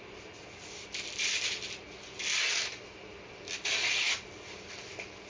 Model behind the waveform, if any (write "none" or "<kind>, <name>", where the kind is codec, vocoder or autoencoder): none